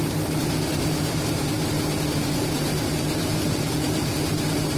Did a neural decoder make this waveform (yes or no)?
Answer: yes